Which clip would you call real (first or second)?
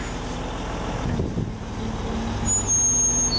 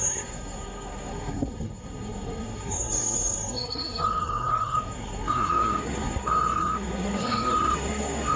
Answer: first